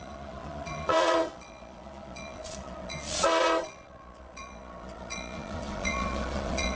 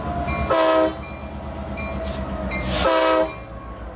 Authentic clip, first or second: second